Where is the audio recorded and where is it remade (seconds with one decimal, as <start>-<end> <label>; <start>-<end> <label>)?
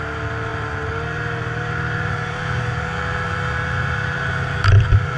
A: 0.0-5.2 remade